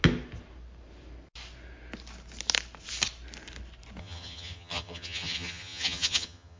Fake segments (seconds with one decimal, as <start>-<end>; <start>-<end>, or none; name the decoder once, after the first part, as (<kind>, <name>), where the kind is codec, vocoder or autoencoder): 4.0-6.6 (vocoder, HiFi-GAN)